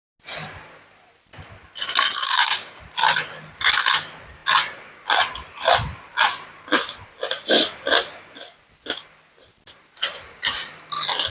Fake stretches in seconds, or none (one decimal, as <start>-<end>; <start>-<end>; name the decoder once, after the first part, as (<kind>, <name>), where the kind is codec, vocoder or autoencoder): 2.2-2.8 (codec, DAC)